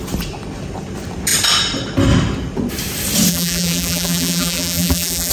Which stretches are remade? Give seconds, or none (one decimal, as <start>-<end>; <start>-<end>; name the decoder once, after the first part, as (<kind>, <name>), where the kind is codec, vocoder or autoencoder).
3.3-5.3 (vocoder, BigVGAN v2)